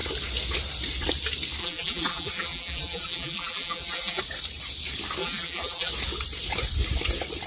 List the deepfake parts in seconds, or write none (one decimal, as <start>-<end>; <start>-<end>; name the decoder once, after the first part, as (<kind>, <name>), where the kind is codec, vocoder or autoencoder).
1.6-4.2 (vocoder, BigVGAN v2); 5.2-5.9

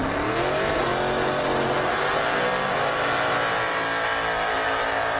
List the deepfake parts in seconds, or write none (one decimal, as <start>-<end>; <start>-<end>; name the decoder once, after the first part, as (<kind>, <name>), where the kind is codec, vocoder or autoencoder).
none

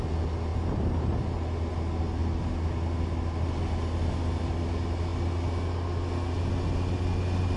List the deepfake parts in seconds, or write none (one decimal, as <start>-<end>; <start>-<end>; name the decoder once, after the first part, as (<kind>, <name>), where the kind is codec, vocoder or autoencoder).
0.5-1.5 (vocoder, BigVGAN v2)